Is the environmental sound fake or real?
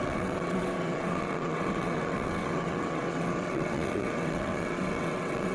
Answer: fake